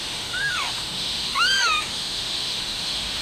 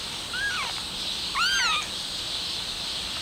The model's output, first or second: first